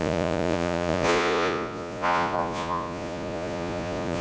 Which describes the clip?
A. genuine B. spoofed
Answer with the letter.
B